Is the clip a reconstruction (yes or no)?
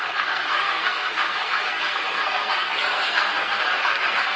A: yes